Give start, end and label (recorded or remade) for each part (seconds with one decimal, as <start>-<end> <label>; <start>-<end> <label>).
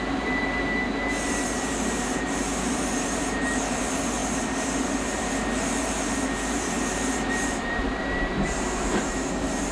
0.0-9.7 remade